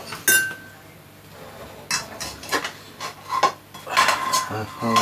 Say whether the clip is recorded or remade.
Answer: recorded